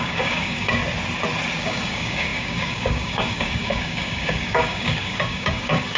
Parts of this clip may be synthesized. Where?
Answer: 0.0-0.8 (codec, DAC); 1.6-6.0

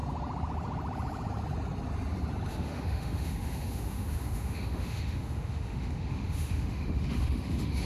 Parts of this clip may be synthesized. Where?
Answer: 2.5-7.9 (autoencoder, DAC-VAE)

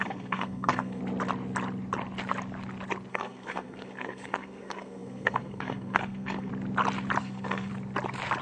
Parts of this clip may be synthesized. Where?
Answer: 0.0-1.0 (codec, SNAC); 3.1-6.5; 7.2-7.7

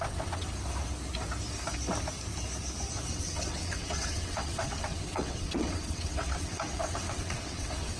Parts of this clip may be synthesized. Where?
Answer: 0.0-0.5 (vocoder, WaveNeXt); 3.1-8.0

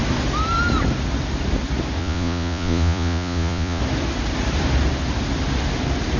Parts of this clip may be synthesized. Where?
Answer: 2.0-3.8 (vocoder, Vocos)

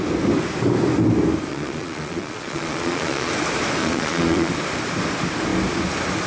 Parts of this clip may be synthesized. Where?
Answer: 1.5-3.3 (vocoder, Vocos); 3.8-4.5

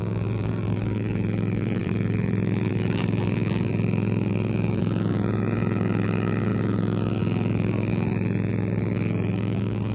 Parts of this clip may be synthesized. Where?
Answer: 0.0-9.9 (vocoder, BigVGAN v2)

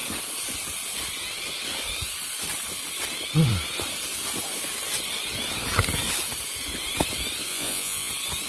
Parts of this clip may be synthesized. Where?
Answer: 7.5-8.1 (vocoder, Vocos)